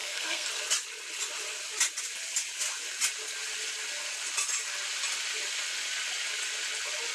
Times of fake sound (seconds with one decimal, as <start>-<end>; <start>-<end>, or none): 0.0-0.5